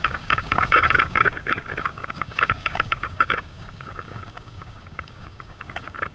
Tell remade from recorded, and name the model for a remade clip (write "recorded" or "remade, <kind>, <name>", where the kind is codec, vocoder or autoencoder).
remade, codec, DAC